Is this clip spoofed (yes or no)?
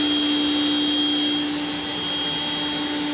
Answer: no